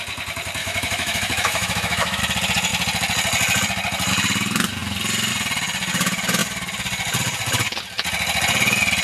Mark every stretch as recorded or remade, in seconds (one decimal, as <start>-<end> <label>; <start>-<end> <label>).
0.0-0.6 recorded; 0.6-2.2 remade; 2.2-9.0 recorded